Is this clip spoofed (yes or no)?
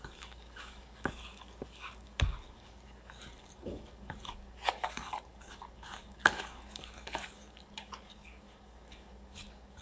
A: yes